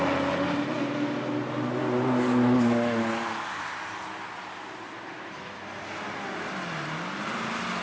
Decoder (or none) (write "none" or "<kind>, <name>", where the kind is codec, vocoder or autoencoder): none